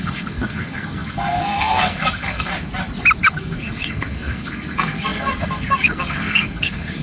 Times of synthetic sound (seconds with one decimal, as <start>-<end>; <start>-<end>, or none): 0.0-2.5; 3.3-7.0